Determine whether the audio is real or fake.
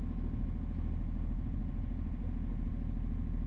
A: real